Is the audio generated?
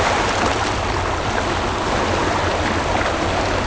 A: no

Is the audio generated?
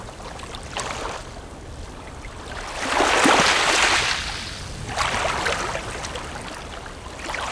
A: no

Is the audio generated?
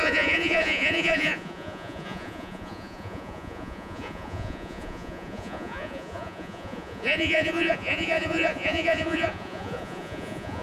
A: yes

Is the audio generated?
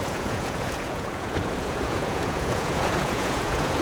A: yes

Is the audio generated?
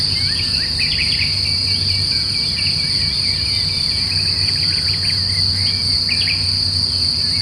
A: no